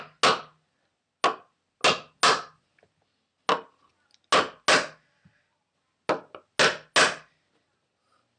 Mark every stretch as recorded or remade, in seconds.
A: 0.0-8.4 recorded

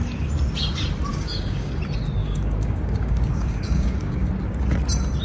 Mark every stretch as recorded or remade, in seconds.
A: 0.0-1.1 recorded; 1.1-1.7 remade; 1.7-2.2 recorded; 2.2-4.3 remade; 4.3-5.2 recorded

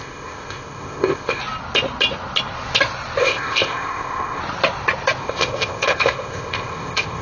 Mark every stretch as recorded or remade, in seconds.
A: 0.0-1.4 remade; 1.4-3.2 recorded; 3.2-4.4 remade; 4.4-5.2 recorded; 5.2-7.2 remade

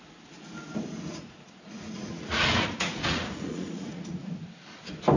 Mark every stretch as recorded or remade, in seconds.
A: 0.0-1.1 recorded; 1.1-4.2 remade; 4.2-5.2 recorded

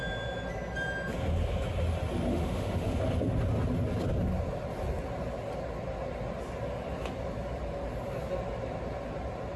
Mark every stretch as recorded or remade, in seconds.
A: 0.0-2.3 recorded; 2.3-3.0 remade; 3.0-9.6 recorded

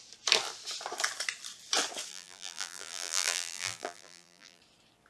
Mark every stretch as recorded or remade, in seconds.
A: 0.0-2.1 recorded; 2.1-4.6 remade; 4.6-5.1 recorded

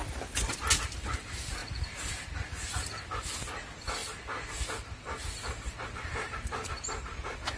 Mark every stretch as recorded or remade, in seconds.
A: 0.0-7.6 recorded